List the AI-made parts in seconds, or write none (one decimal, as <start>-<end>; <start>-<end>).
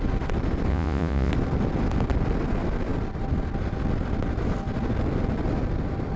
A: 0.7-1.3